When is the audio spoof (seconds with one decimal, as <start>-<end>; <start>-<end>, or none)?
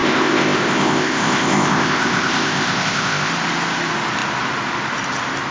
0.0-3.3